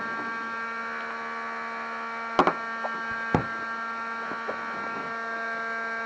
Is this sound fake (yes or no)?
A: no